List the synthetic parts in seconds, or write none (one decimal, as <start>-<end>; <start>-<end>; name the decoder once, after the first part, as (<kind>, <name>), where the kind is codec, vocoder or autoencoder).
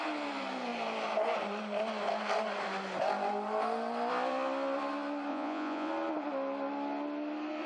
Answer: 5.3-5.9 (vocoder, Vocos)